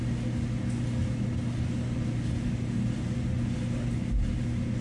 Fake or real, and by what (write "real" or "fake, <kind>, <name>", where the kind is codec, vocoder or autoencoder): real